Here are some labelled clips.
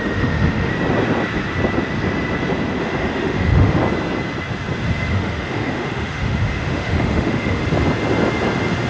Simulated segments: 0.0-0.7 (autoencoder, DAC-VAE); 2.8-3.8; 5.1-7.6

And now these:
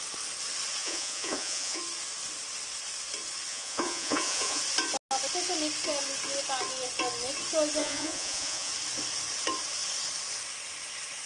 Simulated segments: 0.8-1.8 (vocoder, Vocos); 3.5-4.6; 7.8-8.7